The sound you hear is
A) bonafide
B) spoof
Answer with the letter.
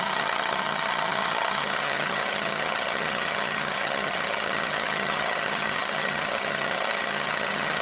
B